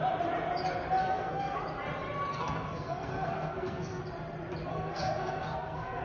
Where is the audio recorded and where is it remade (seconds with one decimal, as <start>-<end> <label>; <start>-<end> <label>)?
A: 0.0-1.0 recorded; 1.0-1.6 remade; 1.6-2.3 recorded; 2.3-4.0 remade; 4.0-4.7 recorded; 4.7-6.0 remade